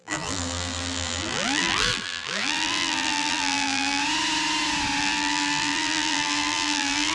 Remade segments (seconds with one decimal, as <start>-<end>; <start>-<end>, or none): 0.0-4.0; 5.0-7.1